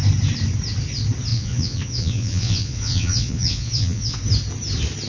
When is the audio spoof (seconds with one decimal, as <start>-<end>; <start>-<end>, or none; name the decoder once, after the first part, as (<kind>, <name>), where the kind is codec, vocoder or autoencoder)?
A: 1.3-4.2 (vocoder, Vocos)